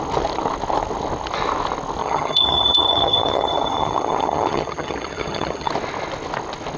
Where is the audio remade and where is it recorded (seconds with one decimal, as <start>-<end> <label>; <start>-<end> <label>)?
0.0-2.0 recorded; 2.0-5.7 remade; 5.7-6.8 recorded